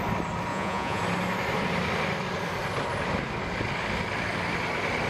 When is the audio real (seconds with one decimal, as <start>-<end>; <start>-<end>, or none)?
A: 0.0-0.5; 1.0-5.1